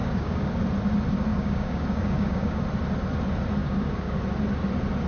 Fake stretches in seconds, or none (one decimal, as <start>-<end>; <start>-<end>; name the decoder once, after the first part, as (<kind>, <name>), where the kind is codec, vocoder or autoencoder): 0.0-0.5 (codec, DAC); 1.3-2.6; 3.6-4.2